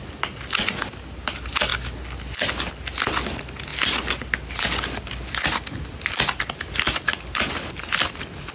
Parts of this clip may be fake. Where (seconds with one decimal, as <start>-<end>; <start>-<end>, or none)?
none